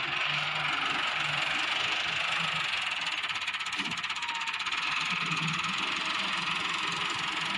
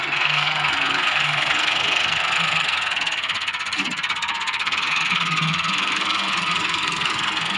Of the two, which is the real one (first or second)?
first